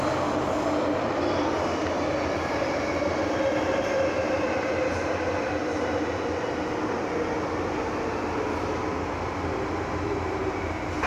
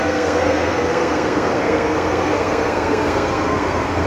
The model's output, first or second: second